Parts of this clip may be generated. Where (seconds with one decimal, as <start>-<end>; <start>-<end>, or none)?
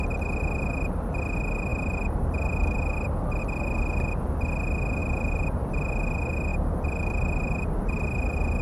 1.7-3.4; 5.0-5.6; 6.5-7.8